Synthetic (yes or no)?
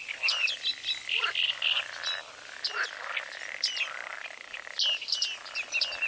no